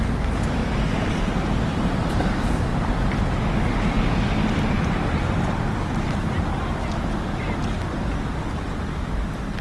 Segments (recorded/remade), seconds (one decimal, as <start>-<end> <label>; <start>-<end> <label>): 0.0-0.6 recorded; 0.6-2.2 remade; 2.2-9.6 recorded